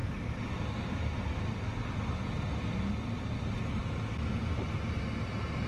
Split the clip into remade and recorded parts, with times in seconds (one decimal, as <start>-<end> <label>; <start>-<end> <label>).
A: 0.0-5.7 recorded